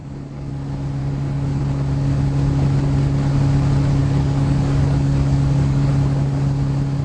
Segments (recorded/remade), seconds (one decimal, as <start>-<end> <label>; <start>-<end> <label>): 0.0-0.5 remade; 0.5-1.0 recorded; 1.0-1.6 remade; 1.6-4.0 recorded; 4.0-5.9 remade; 5.9-7.0 recorded